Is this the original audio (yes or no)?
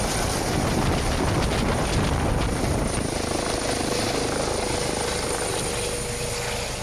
yes